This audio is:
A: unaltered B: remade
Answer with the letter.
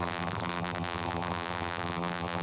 B